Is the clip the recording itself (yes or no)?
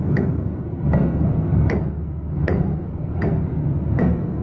no